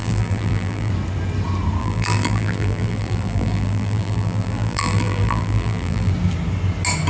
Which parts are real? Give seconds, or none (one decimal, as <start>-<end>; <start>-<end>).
0.9-1.8; 6.1-7.1